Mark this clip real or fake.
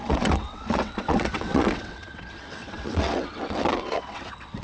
fake